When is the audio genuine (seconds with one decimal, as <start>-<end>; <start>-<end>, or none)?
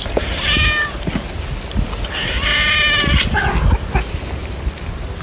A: 0.0-5.2